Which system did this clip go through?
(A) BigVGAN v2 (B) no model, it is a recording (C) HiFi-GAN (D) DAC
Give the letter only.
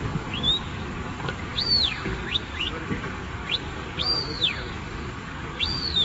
D